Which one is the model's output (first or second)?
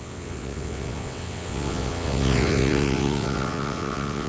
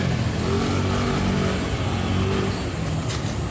first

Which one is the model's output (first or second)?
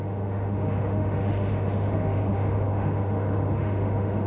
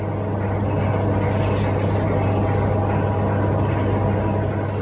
first